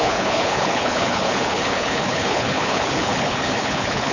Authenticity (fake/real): fake